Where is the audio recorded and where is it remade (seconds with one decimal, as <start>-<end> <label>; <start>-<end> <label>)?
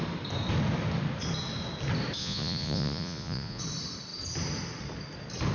0.0-2.2 recorded; 2.2-3.6 remade; 3.6-5.5 recorded